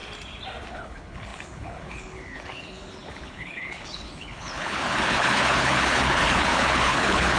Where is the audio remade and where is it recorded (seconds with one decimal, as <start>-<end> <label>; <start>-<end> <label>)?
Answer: 0.0-0.7 recorded; 0.7-7.4 remade